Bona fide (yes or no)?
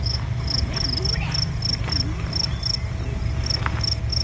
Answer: yes